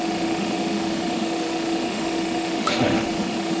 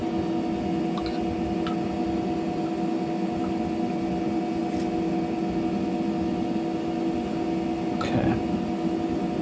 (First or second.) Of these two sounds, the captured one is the second